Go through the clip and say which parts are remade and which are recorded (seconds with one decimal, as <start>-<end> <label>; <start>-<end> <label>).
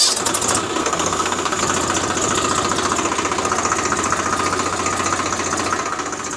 0.0-0.8 recorded; 0.8-1.6 remade; 1.6-6.4 recorded